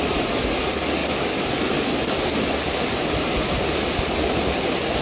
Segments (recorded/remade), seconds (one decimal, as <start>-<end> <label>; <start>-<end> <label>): 0.0-5.0 recorded